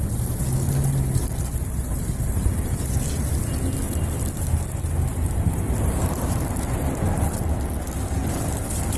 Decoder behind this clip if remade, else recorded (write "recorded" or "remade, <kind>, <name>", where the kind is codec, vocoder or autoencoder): recorded